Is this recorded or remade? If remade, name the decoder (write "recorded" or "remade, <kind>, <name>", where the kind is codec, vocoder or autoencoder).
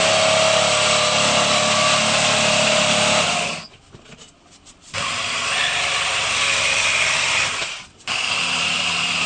recorded